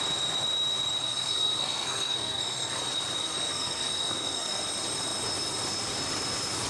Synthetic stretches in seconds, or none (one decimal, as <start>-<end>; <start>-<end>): 1.0-2.8; 3.2-4.6